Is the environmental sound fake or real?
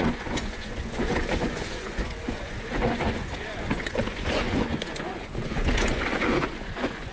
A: fake